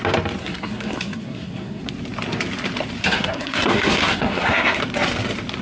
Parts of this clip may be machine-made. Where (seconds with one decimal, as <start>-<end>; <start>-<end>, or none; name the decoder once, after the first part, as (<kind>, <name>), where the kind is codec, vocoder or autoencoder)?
0.4-1.8 (codec, SNAC); 3.0-4.8